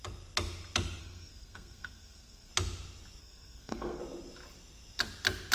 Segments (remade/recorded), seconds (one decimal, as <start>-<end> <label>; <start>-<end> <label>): 0.0-1.0 recorded; 1.0-2.5 remade; 2.5-3.2 recorded; 3.2-4.0 remade; 4.0-5.5 recorded